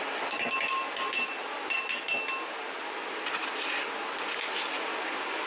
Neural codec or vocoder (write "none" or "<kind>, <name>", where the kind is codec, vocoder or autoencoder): none